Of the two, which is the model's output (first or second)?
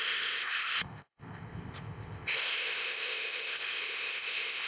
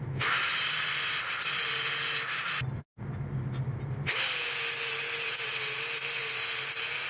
first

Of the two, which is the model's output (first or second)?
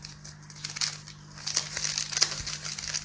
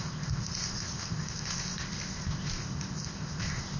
second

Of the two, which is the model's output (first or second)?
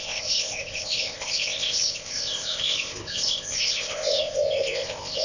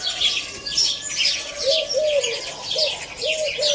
first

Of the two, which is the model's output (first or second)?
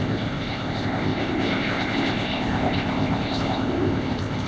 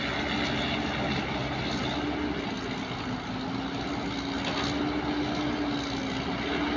first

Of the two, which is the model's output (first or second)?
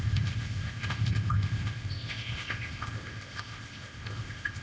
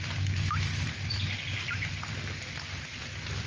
first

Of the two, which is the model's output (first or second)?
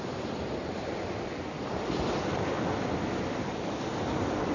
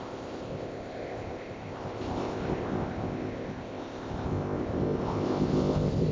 second